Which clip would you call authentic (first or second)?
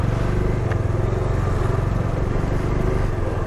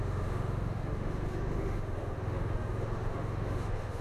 first